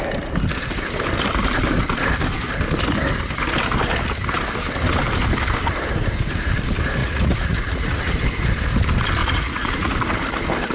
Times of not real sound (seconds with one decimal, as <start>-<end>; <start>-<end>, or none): 7.0-8.1; 9.2-9.9

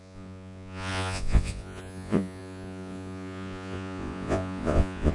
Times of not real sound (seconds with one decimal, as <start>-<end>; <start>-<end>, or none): 0.0-5.1

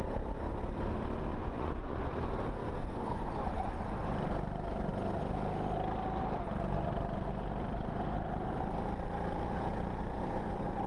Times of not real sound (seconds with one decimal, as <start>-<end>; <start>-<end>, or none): 1.3-2.1; 2.6-3.8

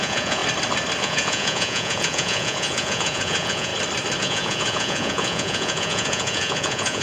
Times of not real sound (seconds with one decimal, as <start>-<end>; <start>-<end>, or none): 0.0-0.4; 1.0-3.7; 4.2-7.0

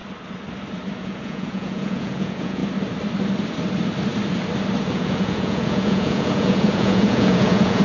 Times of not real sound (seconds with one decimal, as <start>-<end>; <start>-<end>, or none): 1.0-2.6; 4.8-7.8

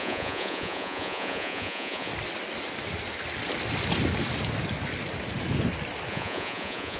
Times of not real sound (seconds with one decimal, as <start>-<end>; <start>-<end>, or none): 0.0-2.1; 6.1-7.0

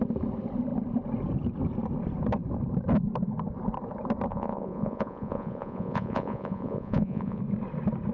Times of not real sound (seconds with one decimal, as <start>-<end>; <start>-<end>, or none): 4.3-7.4

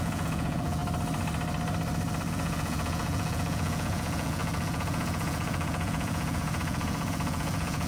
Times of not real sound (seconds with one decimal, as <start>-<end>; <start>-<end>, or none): 0.0-0.8; 2.3-7.9